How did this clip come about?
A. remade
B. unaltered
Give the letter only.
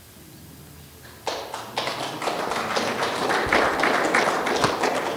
B